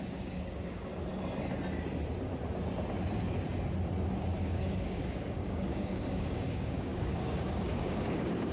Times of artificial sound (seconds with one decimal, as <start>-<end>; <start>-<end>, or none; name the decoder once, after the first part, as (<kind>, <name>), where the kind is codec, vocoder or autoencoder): 0.0-0.9 (codec, DAC); 4.4-8.5

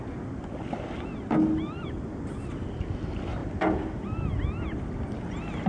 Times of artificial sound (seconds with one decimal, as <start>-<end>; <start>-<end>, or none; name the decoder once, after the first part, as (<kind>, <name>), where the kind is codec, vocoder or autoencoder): none

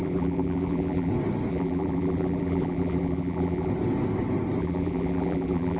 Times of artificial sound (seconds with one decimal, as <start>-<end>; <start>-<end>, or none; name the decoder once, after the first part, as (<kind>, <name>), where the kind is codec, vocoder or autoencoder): 0.0-1.1 (vocoder, BigVGAN v2); 1.5-3.7; 4.6-5.8

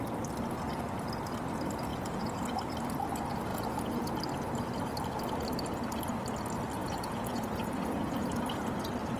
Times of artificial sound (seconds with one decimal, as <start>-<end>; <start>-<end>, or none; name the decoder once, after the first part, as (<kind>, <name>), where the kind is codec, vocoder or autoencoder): 1.9-2.6 (vocoder, Vocos); 3.5-4.1; 6.8-8.7

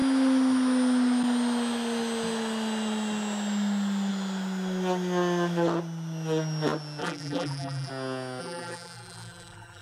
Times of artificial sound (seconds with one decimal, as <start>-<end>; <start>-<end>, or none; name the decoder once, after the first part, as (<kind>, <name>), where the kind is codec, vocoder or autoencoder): 7.0-7.9 (vocoder, BigVGAN v2); 8.4-9.8

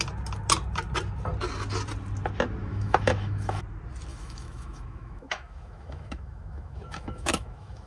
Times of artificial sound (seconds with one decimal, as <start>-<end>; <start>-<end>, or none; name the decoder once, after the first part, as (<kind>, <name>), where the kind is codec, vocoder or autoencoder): 2.7-3.6 (autoencoder, DAC-VAE); 4.1-7.9

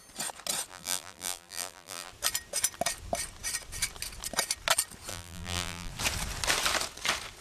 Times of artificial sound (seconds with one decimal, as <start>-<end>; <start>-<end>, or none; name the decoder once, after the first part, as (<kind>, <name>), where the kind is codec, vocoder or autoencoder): 0.7-2.1 (vocoder, BigVGAN v2); 5.1-5.9